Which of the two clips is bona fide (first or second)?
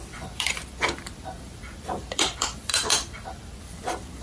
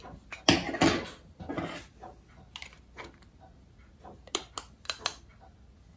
second